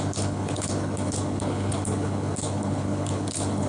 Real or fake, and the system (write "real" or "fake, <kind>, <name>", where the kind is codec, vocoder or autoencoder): fake, codec, HILCodec